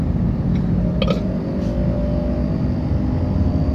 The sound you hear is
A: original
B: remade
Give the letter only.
A